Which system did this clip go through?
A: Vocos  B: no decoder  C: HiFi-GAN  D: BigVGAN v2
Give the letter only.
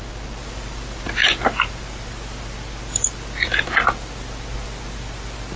B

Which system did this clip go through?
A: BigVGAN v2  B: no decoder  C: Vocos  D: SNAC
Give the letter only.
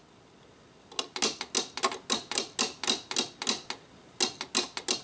B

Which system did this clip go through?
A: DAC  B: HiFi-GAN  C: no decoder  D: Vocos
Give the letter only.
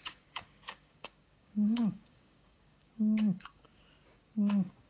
A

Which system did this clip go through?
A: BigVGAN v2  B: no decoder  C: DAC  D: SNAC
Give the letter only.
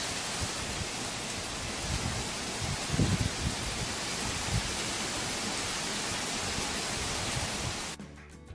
B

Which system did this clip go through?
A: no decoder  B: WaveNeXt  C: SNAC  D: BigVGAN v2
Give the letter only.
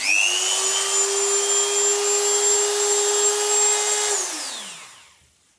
A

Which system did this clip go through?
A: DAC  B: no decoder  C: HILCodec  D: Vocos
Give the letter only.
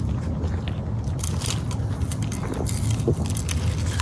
B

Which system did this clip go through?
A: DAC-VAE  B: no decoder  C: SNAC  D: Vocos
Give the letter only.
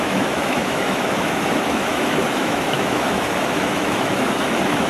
A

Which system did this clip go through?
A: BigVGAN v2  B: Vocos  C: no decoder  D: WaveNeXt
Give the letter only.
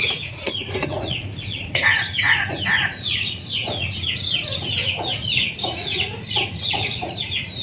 B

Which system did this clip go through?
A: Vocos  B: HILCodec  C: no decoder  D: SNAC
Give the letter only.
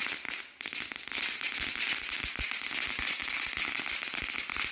C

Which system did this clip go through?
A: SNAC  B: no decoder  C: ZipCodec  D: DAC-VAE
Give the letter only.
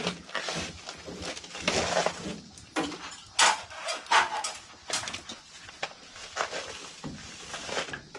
B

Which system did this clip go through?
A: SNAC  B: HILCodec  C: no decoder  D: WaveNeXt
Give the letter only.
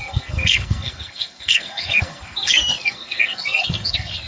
A